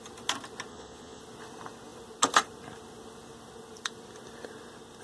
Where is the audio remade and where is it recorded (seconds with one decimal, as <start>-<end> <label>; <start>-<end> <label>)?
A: 0.0-0.7 recorded; 0.7-1.2 remade; 1.2-5.0 recorded